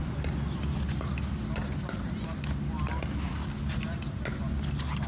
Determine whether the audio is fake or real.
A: real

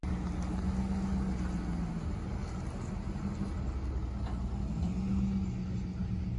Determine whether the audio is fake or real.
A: real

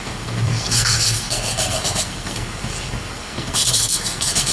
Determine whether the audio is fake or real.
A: fake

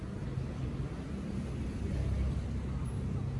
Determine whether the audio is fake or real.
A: real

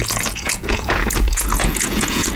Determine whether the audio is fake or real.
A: fake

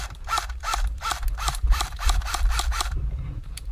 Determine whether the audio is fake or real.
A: fake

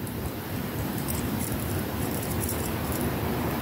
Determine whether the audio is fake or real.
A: fake